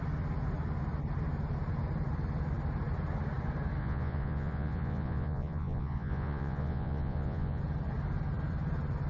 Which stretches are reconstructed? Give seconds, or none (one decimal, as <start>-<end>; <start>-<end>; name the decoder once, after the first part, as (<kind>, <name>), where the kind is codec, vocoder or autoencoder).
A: 3.8-7.6 (vocoder, Vocos)